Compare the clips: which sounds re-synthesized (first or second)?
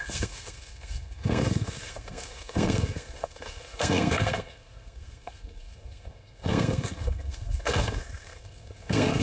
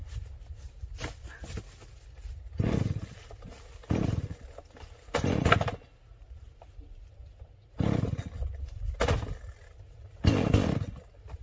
first